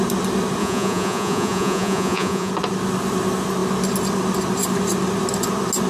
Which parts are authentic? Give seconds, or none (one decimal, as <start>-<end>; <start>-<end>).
0.0-0.6; 2.5-5.9